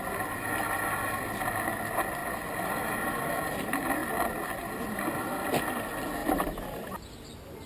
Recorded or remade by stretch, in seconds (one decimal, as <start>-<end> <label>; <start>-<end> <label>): 0.0-2.2 recorded; 2.2-3.2 remade; 3.2-6.2 recorded; 6.2-7.1 remade; 7.1-7.7 recorded